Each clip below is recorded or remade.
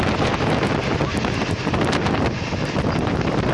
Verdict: recorded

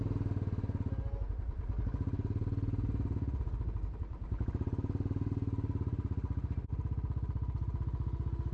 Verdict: recorded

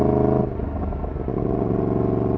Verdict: recorded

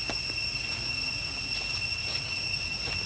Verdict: recorded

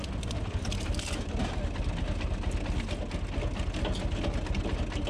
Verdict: recorded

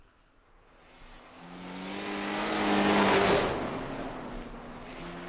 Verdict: recorded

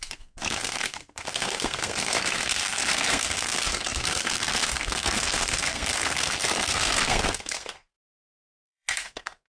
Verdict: remade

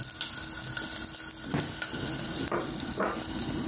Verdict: recorded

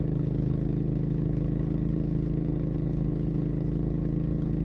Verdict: remade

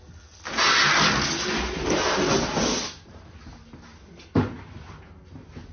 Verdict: recorded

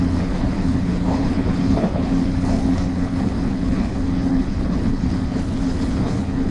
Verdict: remade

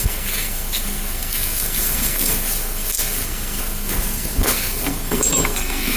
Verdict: remade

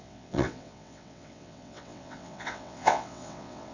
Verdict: remade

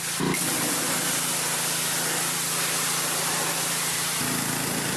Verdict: recorded